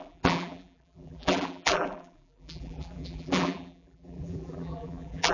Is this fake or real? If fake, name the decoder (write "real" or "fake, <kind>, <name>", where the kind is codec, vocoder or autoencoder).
fake, vocoder, BigVGAN v2